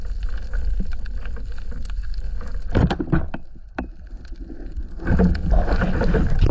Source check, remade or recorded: recorded